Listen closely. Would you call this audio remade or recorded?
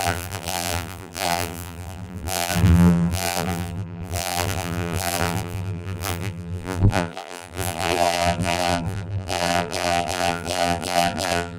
remade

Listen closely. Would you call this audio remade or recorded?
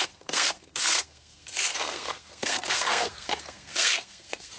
remade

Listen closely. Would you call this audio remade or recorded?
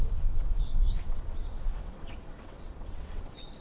remade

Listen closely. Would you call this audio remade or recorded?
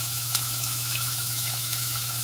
remade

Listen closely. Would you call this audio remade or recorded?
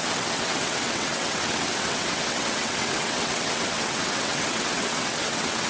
remade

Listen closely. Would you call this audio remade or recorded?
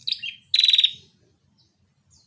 recorded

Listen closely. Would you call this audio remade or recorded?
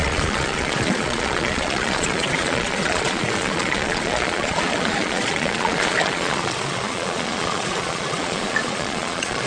remade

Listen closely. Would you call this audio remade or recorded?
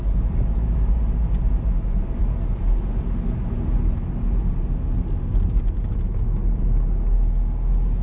recorded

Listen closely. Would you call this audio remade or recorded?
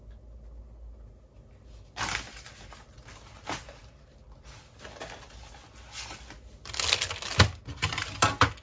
recorded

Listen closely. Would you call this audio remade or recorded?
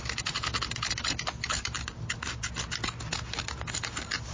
recorded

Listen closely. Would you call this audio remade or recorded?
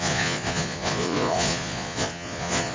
remade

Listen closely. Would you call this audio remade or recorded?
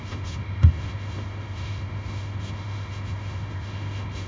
remade